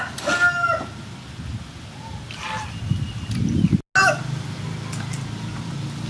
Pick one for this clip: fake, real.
real